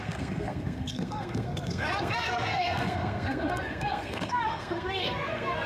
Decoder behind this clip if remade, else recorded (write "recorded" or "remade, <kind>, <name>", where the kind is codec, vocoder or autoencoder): remade, codec, SNAC